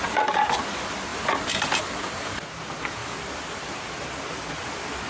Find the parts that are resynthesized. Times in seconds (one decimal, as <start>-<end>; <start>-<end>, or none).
3.0-3.8